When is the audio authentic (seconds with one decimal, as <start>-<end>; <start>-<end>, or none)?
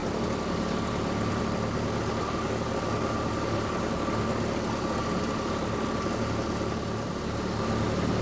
1.4-8.2